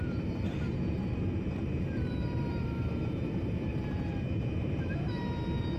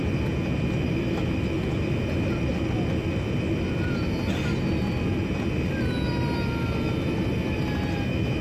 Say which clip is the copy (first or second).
first